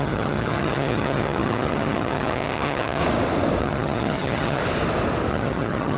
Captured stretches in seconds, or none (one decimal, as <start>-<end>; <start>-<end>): 3.0-3.6; 4.6-5.3